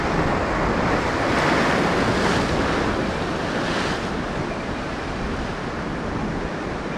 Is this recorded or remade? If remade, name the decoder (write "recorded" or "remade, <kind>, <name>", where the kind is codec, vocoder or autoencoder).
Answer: recorded